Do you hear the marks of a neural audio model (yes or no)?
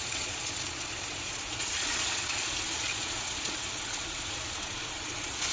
yes